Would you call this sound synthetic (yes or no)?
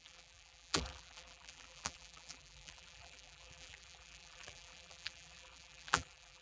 yes